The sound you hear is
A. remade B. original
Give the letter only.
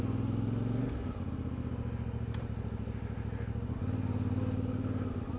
B